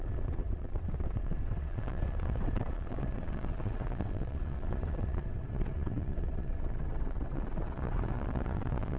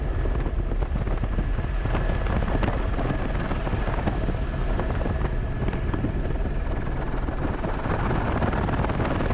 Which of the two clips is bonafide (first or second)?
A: second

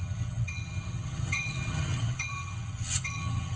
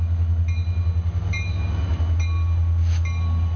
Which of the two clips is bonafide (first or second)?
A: second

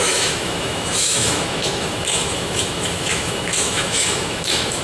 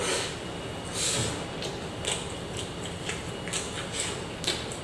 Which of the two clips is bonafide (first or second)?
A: second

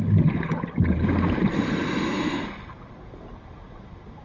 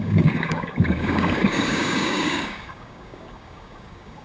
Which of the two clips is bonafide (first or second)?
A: first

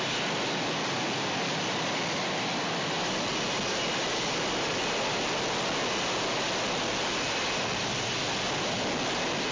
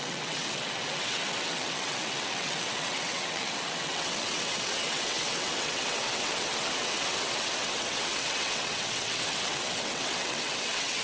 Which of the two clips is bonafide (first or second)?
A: first